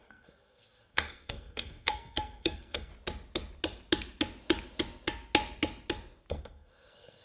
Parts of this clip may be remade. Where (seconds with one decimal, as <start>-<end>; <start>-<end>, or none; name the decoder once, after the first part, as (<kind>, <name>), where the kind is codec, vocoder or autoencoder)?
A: 0.0-2.9 (codec, SNAC); 6.3-7.2